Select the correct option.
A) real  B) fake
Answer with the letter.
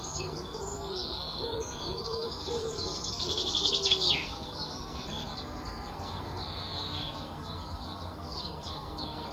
B